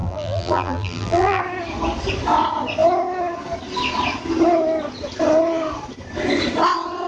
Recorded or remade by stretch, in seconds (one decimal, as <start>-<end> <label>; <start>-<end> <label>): 0.0-1.4 remade; 1.4-7.1 recorded